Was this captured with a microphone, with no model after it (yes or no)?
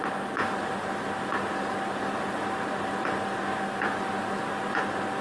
yes